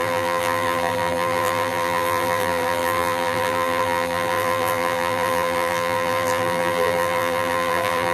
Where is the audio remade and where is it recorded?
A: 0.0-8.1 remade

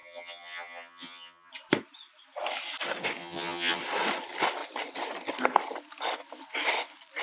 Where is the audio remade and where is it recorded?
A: 0.0-1.5 remade; 1.5-3.2 recorded; 3.2-3.8 remade; 3.8-7.2 recorded

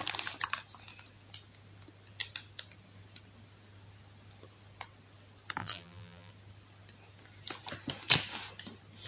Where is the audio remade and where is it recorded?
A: 0.0-5.6 recorded; 5.6-6.3 remade; 6.3-9.1 recorded

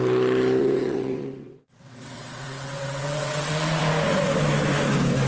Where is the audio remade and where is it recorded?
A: 0.0-0.6 recorded; 0.6-3.8 remade; 3.8-5.3 recorded